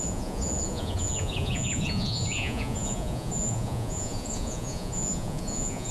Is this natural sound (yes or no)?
no